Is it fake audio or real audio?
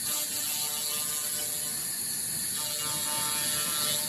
real